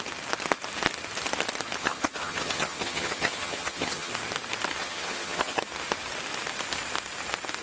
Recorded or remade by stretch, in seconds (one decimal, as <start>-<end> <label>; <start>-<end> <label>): 0.0-1.8 recorded; 1.8-4.1 remade; 4.1-4.8 recorded; 4.8-5.6 remade; 5.6-7.6 recorded